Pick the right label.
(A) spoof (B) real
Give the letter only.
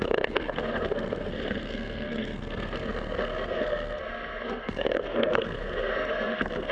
A